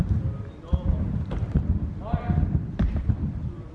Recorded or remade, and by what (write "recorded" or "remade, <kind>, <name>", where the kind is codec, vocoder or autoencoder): recorded